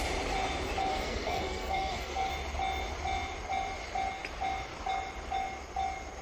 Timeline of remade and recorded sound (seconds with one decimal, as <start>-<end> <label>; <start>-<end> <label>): 0.0-0.9 recorded; 0.9-2.3 remade; 2.3-6.2 recorded